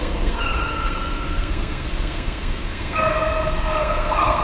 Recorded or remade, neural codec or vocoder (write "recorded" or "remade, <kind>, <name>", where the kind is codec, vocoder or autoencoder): remade, codec, SNAC